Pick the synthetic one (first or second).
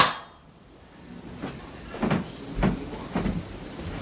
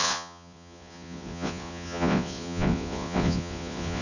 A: second